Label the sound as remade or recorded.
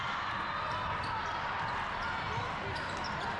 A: recorded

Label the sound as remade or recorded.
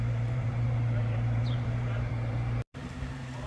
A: remade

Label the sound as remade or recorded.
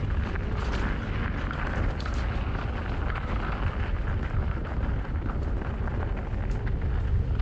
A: recorded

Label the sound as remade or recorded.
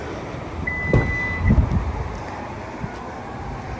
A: recorded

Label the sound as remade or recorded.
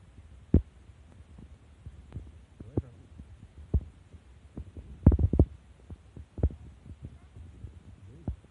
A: recorded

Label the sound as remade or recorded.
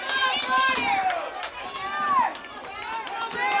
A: recorded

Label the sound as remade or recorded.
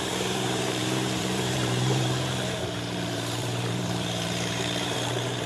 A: remade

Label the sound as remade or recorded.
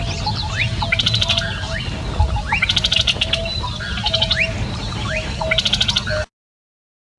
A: recorded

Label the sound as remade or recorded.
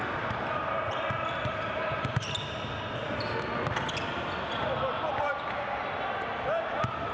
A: recorded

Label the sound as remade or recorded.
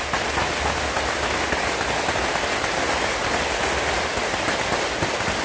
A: recorded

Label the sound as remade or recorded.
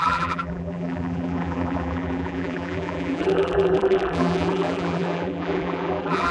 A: remade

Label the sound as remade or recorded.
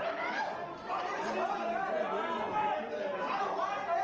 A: recorded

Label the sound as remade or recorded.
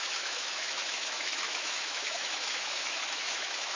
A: remade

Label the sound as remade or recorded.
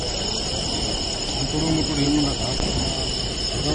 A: recorded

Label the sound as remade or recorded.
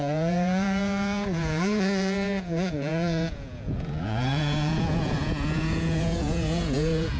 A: remade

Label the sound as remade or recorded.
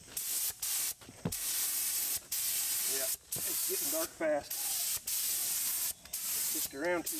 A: recorded